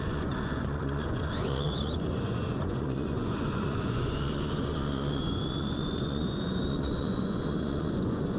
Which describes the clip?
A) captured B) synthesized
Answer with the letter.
B